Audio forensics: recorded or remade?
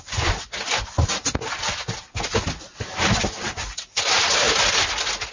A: recorded